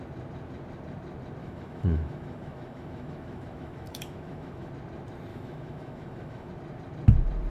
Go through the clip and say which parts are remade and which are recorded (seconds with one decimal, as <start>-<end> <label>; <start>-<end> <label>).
0.0-1.4 recorded; 1.4-4.7 remade; 4.7-5.3 recorded; 5.3-6.5 remade; 6.5-7.5 recorded